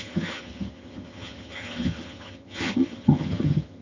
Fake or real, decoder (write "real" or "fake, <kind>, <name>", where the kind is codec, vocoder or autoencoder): fake, vocoder, HiFi-GAN